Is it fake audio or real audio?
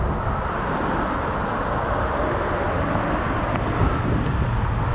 real